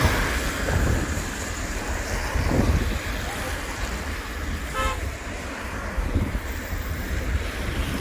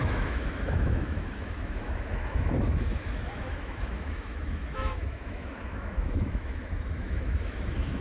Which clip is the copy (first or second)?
second